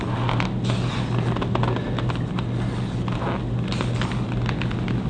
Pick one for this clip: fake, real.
real